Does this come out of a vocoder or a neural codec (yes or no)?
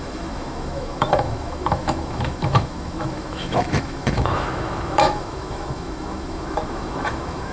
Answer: yes